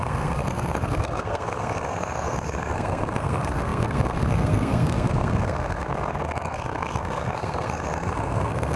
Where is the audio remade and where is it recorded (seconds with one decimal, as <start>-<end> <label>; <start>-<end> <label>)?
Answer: 0.0-8.8 remade